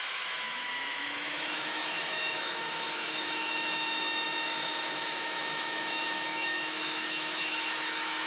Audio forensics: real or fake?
fake